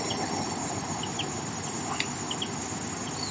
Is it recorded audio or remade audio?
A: recorded